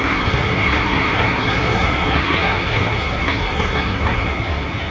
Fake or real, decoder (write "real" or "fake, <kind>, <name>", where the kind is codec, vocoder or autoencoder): fake, codec, SNAC